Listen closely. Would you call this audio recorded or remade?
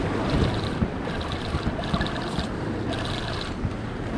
recorded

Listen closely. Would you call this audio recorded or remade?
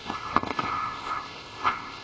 remade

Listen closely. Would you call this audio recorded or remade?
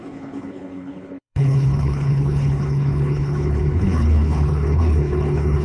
remade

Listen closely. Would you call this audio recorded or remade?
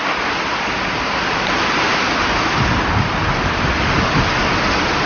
remade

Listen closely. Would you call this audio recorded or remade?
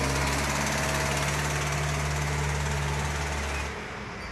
recorded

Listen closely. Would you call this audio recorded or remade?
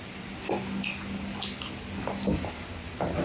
recorded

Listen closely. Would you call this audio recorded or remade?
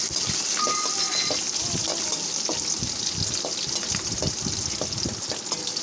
recorded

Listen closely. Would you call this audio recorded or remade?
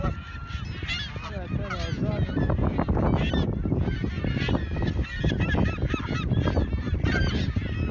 recorded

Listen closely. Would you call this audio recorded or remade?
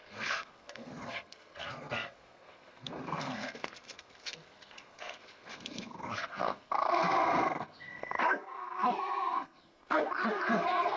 remade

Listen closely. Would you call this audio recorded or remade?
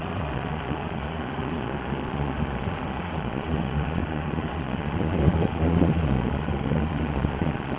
remade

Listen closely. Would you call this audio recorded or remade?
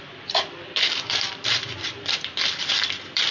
remade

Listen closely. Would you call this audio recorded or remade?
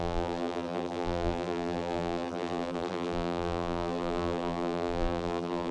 remade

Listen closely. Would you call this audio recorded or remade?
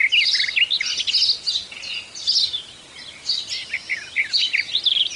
recorded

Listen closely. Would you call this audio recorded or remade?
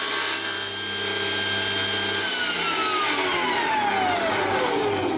recorded